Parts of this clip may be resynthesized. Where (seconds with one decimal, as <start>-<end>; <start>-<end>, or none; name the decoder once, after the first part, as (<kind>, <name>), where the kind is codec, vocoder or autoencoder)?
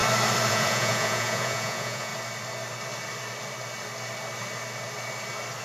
0.5-2.1 (vocoder, Vocos)